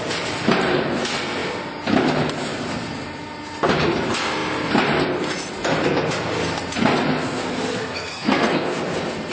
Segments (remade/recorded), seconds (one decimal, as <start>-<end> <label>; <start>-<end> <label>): 0.0-7.2 recorded; 7.2-8.8 remade; 8.8-9.3 recorded